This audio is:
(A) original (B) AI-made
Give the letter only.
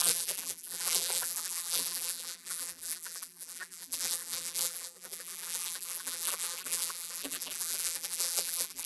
B